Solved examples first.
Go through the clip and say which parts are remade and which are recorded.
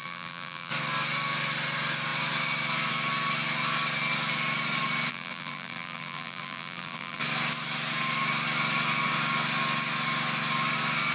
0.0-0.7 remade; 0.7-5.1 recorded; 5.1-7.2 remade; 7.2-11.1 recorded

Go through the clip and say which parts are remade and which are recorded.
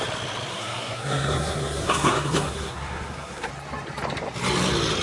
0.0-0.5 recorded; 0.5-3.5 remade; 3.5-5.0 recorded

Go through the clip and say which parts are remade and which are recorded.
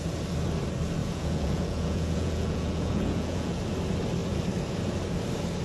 0.0-1.0 recorded; 1.0-3.6 remade; 3.6-5.6 recorded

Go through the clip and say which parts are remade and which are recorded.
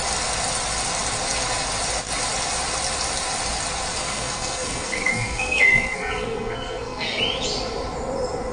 0.0-4.0 recorded; 4.0-7.2 remade; 7.2-8.5 recorded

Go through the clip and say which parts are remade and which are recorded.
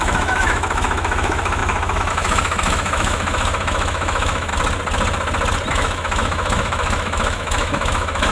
0.0-4.5 remade; 4.5-5.7 recorded; 5.7-8.3 remade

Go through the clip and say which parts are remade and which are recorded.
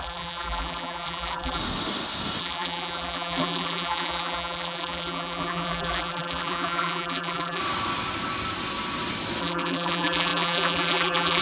0.0-1.6 remade; 1.6-2.4 recorded; 2.4-7.6 remade; 7.6-9.4 recorded; 9.4-11.4 remade